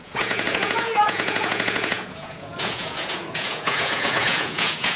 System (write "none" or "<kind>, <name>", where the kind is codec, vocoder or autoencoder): vocoder, Vocos